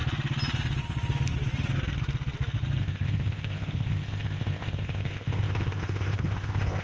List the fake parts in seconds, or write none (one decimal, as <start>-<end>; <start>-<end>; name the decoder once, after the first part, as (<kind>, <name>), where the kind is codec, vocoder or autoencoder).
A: 2.8-6.8 (codec, ZipCodec)